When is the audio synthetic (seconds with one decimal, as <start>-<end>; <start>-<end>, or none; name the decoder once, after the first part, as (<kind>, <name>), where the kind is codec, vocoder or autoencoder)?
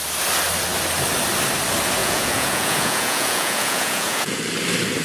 2.0-4.4 (vocoder, Vocos)